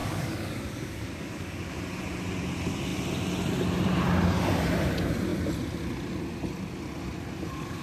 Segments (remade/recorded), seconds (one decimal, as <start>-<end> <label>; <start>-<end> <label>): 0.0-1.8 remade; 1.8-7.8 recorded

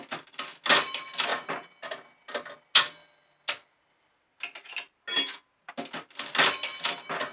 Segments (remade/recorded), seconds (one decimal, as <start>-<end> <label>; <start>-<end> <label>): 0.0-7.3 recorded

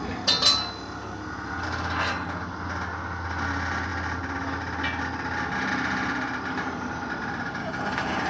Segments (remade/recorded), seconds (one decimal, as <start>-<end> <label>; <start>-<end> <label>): 0.0-7.6 recorded; 7.6-8.3 remade